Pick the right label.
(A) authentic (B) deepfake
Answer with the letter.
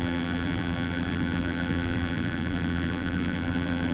B